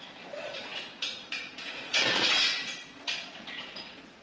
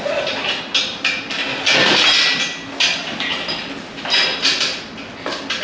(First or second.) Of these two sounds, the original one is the second